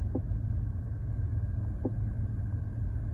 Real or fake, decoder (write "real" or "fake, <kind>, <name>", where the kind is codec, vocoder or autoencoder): real